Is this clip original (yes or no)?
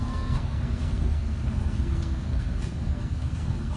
no